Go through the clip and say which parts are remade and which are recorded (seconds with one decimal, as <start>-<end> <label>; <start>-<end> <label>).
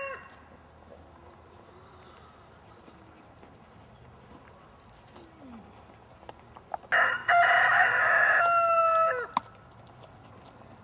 0.0-7.2 recorded; 7.2-8.0 remade; 8.0-10.8 recorded